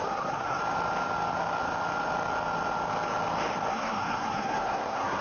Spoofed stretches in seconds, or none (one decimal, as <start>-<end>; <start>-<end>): 0.0-0.6; 3.7-5.2